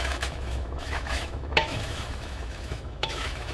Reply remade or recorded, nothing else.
remade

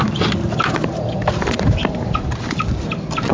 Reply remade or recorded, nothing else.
recorded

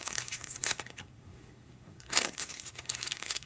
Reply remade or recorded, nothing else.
remade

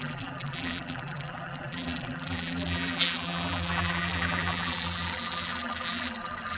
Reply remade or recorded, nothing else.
remade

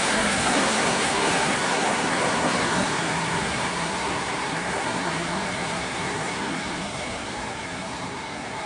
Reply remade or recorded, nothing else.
remade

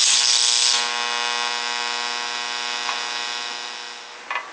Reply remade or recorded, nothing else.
recorded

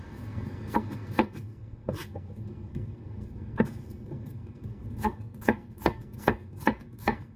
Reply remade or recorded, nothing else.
remade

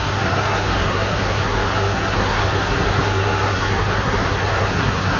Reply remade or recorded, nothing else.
remade